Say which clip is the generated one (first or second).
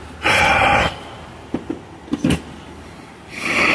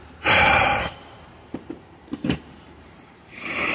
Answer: second